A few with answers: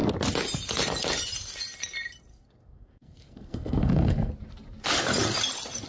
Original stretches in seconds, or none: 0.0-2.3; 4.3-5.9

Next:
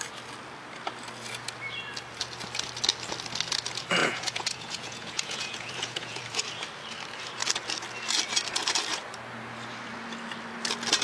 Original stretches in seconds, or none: 0.0-4.0; 6.2-11.0

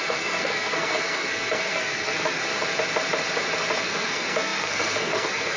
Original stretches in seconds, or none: 2.4-3.8

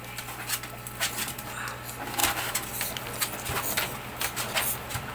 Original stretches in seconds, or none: 0.0-5.1

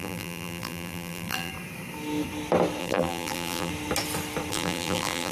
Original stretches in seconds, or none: 1.5-2.8; 3.7-4.5

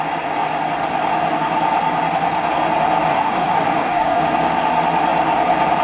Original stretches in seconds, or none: 0.0-3.1; 4.2-5.8